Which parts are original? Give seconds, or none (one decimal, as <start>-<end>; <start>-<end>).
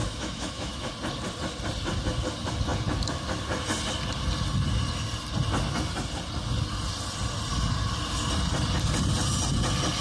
0.9-10.0